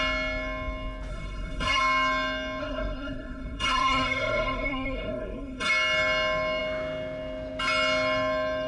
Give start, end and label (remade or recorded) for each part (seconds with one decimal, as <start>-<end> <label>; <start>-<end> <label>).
0.0-1.1 recorded; 1.1-1.8 remade; 1.8-2.6 recorded; 2.6-5.7 remade; 5.7-8.7 recorded